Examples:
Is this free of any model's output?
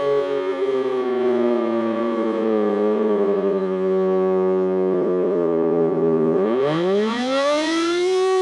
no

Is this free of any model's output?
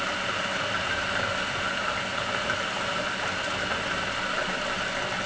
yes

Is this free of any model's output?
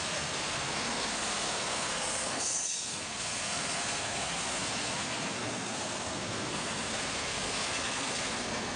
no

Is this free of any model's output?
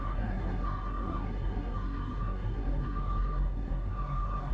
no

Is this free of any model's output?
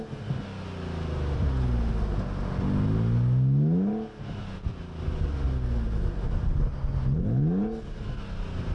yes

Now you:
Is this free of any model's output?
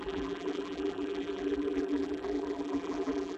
no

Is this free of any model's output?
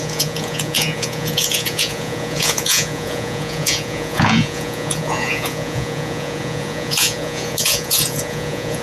no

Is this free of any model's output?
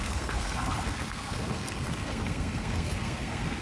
no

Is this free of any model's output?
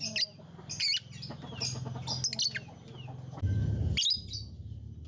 yes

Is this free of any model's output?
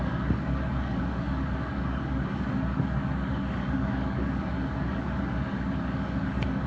no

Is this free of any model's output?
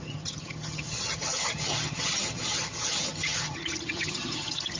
no